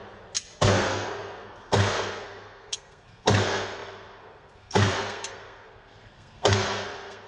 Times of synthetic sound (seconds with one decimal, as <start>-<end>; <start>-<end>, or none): 0.6-7.3